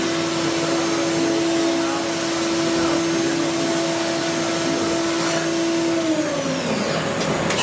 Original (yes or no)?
yes